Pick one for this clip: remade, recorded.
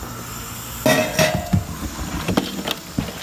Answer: recorded